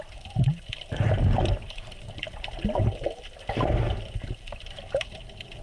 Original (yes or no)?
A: yes